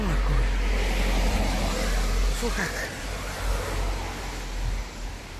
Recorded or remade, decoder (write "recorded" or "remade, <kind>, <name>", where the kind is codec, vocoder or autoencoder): recorded